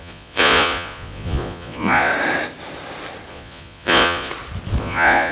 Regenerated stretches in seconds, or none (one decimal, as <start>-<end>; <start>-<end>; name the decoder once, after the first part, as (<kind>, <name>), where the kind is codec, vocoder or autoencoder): 0.0-2.1 (vocoder, Vocos); 3.3-4.3; 4.8-5.3